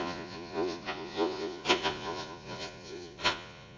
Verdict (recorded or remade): remade